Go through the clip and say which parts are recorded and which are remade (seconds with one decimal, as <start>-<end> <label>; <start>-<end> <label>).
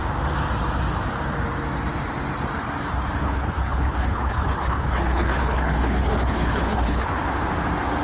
0.0-3.2 recorded; 3.2-7.1 remade; 7.1-8.0 recorded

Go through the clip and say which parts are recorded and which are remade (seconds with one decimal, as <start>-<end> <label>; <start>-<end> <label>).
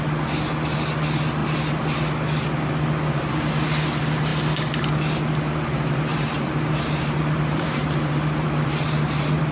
0.0-6.1 recorded; 6.1-9.5 remade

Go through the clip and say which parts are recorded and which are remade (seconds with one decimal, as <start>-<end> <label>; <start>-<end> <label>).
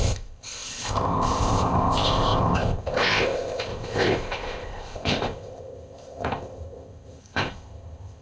0.0-8.2 remade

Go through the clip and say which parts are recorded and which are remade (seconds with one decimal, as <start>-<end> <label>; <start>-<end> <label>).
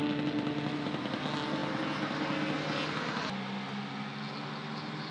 0.0-5.1 recorded